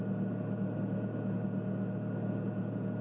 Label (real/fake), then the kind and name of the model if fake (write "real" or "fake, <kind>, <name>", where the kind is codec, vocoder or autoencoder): real